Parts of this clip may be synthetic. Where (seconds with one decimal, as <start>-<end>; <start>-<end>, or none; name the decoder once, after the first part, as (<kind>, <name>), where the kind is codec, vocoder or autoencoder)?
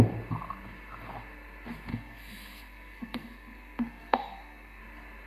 1.9-4.8 (codec, SNAC)